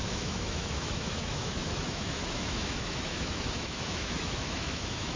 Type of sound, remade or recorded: remade